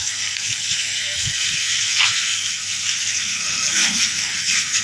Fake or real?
fake